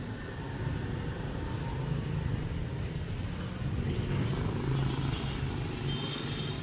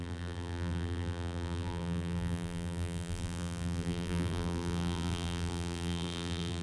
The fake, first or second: second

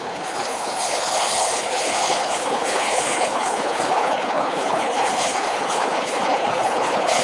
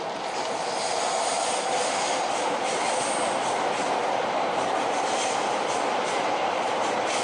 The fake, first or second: first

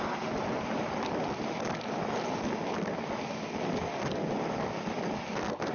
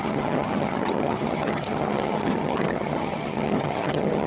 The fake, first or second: second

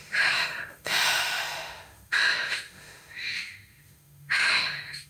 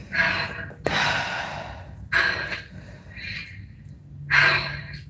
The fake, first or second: first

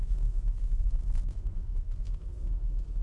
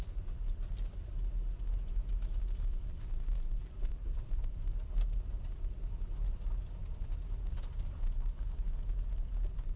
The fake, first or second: first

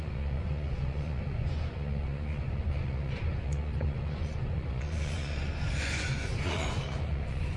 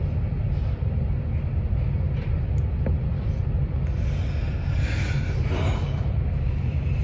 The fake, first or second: first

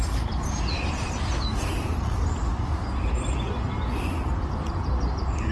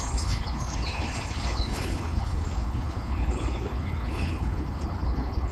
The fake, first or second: second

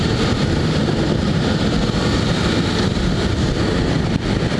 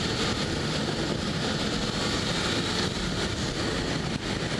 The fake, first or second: first